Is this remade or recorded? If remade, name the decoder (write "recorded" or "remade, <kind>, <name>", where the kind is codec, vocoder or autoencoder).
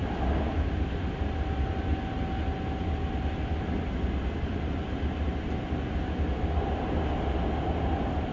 recorded